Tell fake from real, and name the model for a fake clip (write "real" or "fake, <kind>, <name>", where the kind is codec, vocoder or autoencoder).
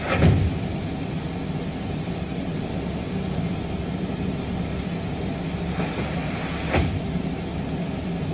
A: real